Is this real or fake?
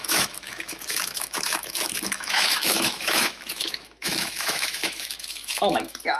fake